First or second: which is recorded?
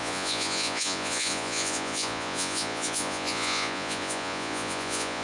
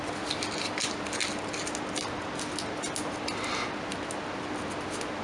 second